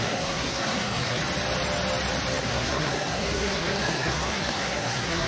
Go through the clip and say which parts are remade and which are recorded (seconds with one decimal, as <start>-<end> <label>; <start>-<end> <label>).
0.0-1.2 remade; 1.2-2.4 recorded; 2.4-5.3 remade